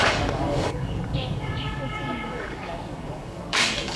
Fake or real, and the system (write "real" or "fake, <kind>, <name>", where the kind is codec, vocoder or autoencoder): fake, codec, DAC